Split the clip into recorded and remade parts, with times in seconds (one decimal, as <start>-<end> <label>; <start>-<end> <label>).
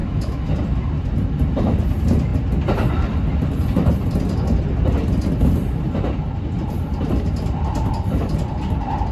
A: 0.0-0.5 remade; 0.5-9.1 recorded